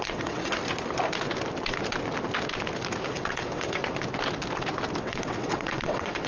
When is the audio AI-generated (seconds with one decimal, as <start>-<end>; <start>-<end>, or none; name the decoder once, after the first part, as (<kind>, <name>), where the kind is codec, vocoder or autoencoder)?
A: 0.0-0.6 (vocoder, WaveNeXt); 3.1-3.8; 5.0-6.3